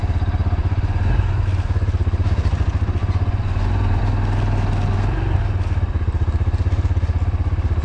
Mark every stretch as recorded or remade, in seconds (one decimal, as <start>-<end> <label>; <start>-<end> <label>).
0.0-0.6 recorded; 0.6-1.4 remade; 1.4-3.0 recorded; 3.0-4.0 remade; 4.0-7.8 recorded